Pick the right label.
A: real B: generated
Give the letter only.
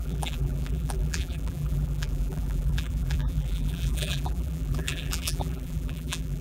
B